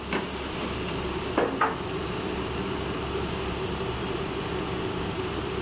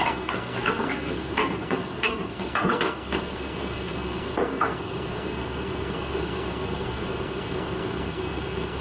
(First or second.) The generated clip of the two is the second